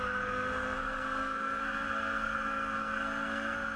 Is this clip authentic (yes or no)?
no